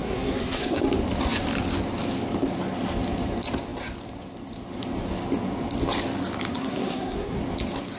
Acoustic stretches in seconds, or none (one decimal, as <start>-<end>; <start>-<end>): 0.8-6.5; 7.4-8.0